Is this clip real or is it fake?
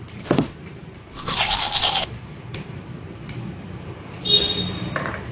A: real